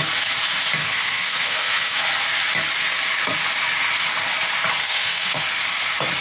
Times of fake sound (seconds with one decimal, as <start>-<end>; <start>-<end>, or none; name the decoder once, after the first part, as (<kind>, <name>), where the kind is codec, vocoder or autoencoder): 0.8-2.0 (codec, SNAC); 4.8-5.4